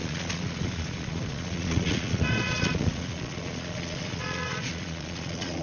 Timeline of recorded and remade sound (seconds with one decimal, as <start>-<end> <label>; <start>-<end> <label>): 0.0-5.6 remade